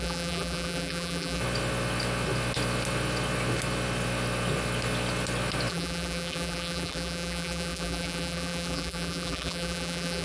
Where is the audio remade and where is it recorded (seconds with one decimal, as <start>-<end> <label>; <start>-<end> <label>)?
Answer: 0.0-1.4 remade; 1.4-5.7 recorded; 5.7-10.2 remade